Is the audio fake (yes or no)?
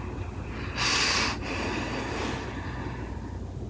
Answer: no